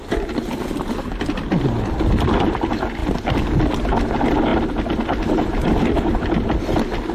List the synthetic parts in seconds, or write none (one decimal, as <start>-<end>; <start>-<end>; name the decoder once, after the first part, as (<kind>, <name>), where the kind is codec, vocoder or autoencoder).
none